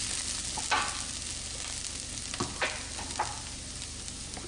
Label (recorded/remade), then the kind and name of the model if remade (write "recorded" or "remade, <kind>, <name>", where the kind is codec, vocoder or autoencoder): recorded